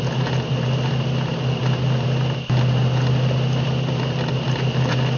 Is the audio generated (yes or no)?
no